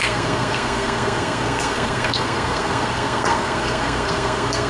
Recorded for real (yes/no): no